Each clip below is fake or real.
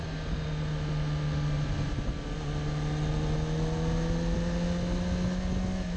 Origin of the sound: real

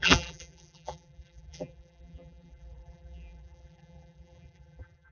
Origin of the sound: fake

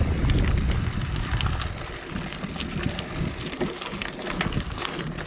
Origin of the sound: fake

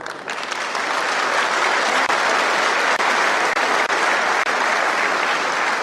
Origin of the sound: real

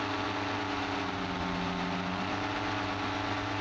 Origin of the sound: real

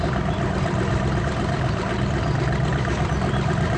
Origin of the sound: fake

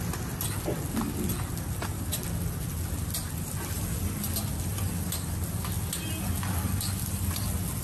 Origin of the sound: real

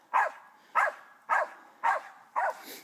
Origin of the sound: real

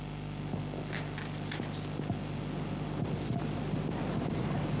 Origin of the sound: real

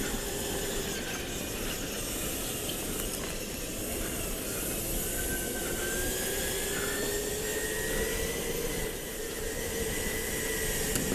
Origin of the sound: real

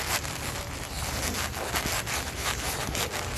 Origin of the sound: fake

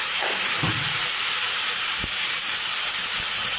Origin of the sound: fake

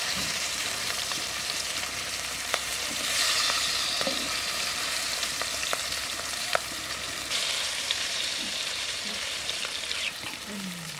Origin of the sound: fake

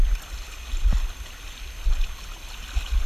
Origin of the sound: real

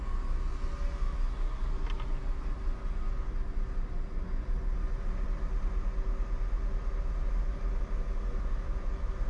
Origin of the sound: real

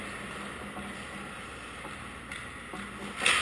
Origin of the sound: real